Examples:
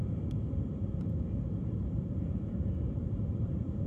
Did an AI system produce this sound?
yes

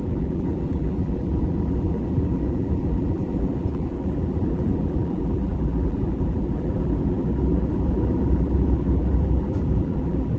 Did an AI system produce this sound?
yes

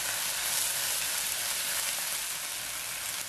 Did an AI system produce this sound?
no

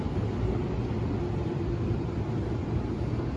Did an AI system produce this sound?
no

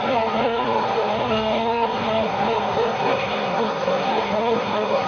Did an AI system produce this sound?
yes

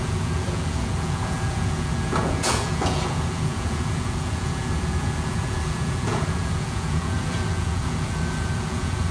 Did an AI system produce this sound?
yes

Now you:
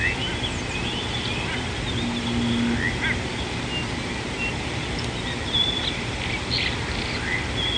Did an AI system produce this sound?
no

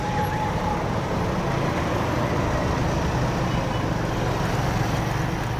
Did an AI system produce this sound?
no